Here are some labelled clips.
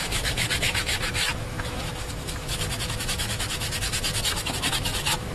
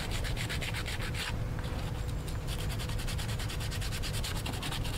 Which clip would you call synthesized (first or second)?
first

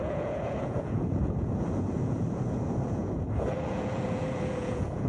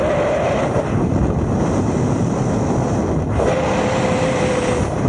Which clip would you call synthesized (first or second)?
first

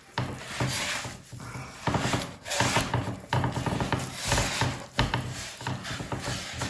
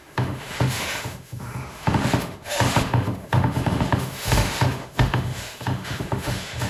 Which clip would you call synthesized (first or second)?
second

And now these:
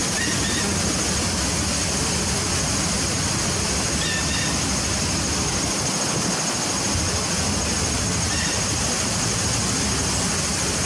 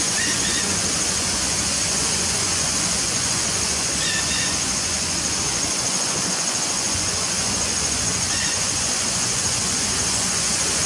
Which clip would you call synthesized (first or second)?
second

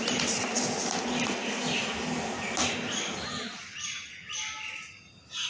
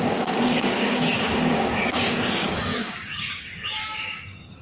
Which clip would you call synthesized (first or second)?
second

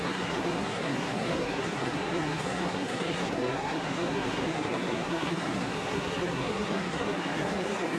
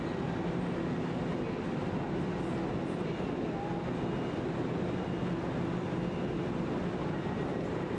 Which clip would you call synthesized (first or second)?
first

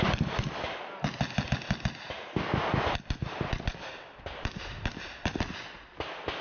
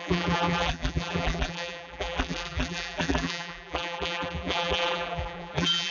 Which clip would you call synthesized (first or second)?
second